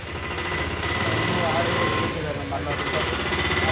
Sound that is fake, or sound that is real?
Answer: real